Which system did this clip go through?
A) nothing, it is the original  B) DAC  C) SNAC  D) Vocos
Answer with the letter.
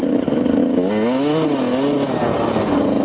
A